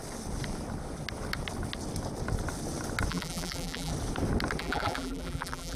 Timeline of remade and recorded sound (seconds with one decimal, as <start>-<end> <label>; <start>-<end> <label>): 0.0-3.1 recorded; 3.1-3.9 remade; 3.9-4.6 recorded; 4.6-5.8 remade